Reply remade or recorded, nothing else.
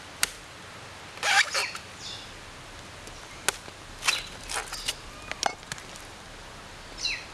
recorded